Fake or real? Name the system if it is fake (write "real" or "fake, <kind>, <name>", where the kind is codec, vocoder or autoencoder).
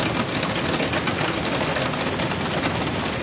real